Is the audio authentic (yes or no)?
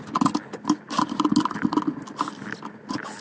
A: yes